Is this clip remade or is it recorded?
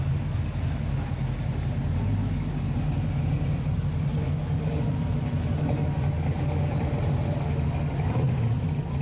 recorded